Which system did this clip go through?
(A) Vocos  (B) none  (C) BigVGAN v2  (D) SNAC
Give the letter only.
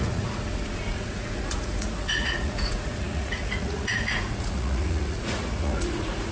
A